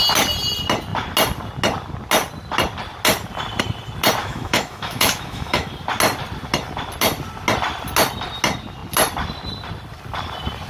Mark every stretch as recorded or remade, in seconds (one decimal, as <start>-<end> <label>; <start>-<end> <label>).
0.0-4.2 recorded; 4.2-5.7 remade; 5.7-10.7 recorded